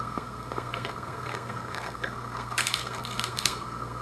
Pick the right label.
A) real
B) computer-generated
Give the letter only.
B